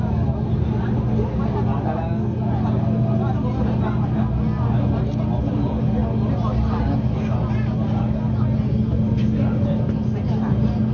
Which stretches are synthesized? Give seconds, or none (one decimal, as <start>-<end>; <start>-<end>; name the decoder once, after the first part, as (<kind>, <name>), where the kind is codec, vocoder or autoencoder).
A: none